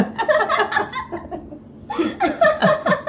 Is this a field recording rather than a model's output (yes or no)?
yes